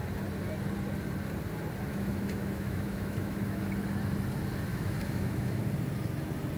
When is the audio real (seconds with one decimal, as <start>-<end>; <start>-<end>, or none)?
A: 0.0-1.9; 3.7-4.7; 5.6-6.6